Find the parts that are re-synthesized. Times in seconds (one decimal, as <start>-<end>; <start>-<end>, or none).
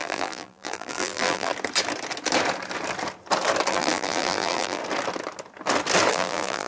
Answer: 0.0-1.5; 3.7-4.8; 6.1-6.7